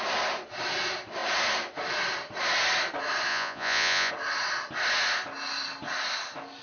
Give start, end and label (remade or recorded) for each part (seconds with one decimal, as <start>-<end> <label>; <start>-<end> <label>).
0.0-3.3 recorded; 3.3-4.1 remade; 4.1-6.6 recorded